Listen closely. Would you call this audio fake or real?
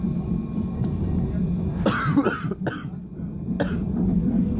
real